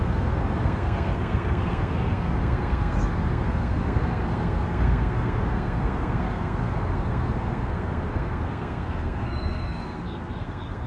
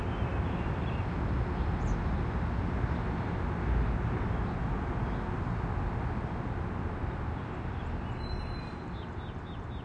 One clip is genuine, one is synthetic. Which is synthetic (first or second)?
first